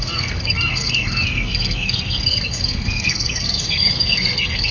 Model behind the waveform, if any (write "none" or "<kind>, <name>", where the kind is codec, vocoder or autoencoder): codec, SNAC